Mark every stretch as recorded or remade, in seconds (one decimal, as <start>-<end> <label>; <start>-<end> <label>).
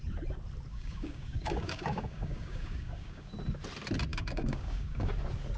0.0-0.7 recorded; 0.7-3.3 remade; 3.3-4.1 recorded; 4.1-5.1 remade; 5.1-5.6 recorded